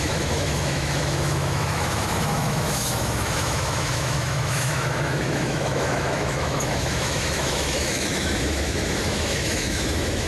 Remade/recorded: remade